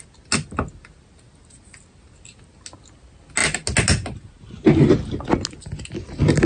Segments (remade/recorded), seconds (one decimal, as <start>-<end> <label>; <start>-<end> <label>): 0.0-6.5 recorded